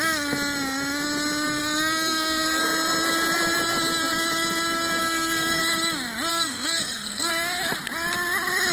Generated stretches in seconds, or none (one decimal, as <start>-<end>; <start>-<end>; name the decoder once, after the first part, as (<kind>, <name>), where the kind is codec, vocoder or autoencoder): 1.6-2.6 (codec, SNAC); 5.0-5.6; 6.3-7.3